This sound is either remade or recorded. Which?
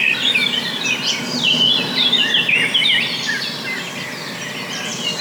recorded